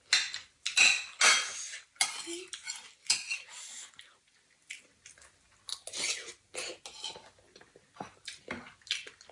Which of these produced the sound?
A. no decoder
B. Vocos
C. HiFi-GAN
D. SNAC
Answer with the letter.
A